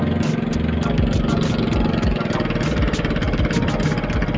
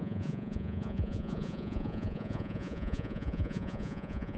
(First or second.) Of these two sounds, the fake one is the second